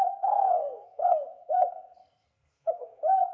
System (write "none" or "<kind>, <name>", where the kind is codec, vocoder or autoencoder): codec, SNAC